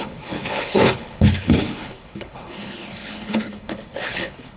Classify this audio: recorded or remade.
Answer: remade